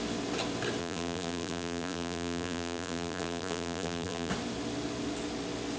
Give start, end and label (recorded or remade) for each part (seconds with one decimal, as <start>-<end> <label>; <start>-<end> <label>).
0.0-0.8 recorded; 0.8-4.3 remade; 4.3-5.8 recorded

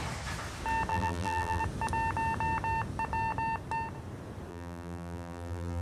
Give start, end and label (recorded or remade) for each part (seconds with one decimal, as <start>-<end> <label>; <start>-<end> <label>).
0.0-0.9 recorded; 0.9-1.6 remade; 1.6-4.5 recorded; 4.5-5.8 remade

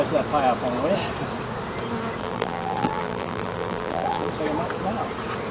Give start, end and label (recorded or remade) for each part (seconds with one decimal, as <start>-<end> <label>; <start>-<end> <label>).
0.0-2.2 recorded; 2.2-4.3 remade; 4.3-5.5 recorded

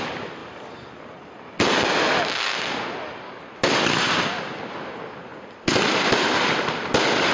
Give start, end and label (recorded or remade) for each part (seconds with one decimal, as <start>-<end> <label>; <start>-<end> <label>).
0.0-7.3 recorded